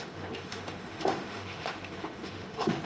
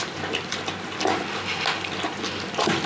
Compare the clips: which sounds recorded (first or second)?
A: second